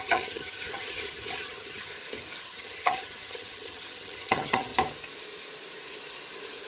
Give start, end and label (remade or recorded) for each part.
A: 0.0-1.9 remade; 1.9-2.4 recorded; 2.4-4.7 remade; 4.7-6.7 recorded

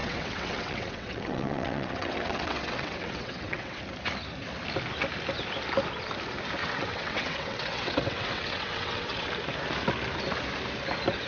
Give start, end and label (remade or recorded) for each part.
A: 0.0-3.8 remade; 3.8-6.6 recorded; 6.6-9.3 remade; 9.3-11.3 recorded

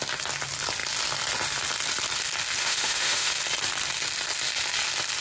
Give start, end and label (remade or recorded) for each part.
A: 0.0-2.6 recorded; 2.6-3.4 remade; 3.4-5.2 recorded

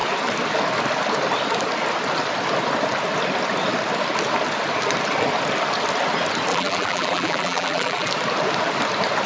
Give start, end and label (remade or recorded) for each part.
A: 0.0-6.5 recorded; 6.5-8.1 remade; 8.1-9.3 recorded

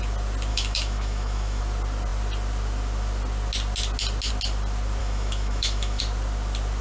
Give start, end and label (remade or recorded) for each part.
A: 0.0-0.5 recorded; 0.5-1.6 remade; 1.6-5.0 recorded; 5.0-6.0 remade; 6.0-6.8 recorded

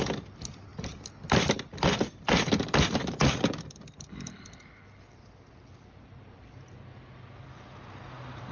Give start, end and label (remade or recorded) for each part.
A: 0.0-8.5 recorded